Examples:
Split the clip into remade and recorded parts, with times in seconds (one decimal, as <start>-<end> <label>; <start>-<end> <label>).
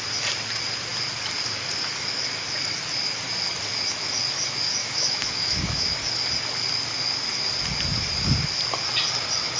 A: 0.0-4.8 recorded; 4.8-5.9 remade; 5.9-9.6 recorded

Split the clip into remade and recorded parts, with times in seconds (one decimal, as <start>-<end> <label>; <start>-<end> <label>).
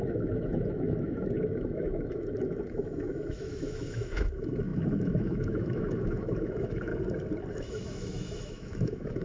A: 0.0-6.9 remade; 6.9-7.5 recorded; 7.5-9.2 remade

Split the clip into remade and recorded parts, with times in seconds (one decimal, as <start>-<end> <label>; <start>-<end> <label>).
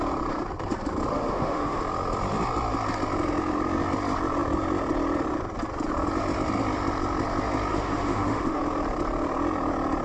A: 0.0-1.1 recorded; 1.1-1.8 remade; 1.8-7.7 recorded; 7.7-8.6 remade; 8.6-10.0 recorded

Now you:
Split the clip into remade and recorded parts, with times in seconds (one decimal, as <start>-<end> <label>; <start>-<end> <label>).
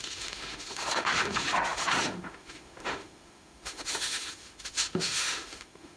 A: 0.0-6.0 remade